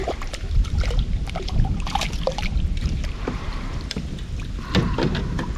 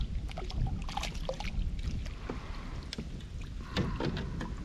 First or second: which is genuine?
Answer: second